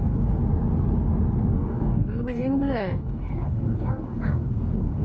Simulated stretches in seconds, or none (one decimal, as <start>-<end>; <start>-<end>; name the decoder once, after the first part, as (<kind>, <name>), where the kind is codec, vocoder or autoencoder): 0.0-0.4 (codec, DAC); 1.5-5.0